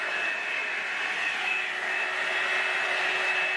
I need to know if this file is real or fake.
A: real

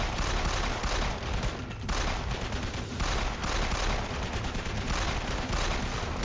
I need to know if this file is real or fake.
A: fake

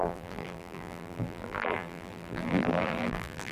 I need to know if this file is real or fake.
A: fake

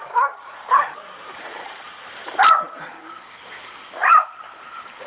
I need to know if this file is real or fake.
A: fake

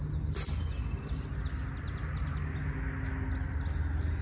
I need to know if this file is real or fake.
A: real